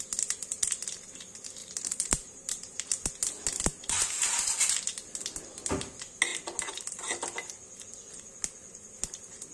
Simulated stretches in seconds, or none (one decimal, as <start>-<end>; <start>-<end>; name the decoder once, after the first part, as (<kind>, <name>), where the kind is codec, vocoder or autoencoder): 1.6-3.0 (vocoder, BigVGAN v2)